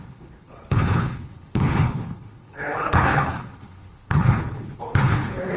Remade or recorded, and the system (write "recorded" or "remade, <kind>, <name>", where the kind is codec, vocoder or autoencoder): remade, codec, HILCodec